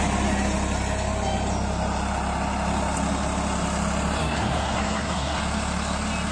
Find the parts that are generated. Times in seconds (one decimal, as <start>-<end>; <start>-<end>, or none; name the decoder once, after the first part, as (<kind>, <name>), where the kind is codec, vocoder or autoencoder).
4.2-5.4 (codec, SNAC)